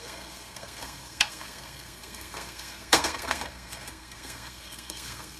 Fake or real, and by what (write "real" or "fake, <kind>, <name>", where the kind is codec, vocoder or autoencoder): fake, codec, SNAC